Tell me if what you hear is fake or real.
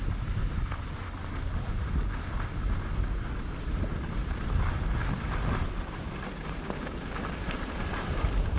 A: real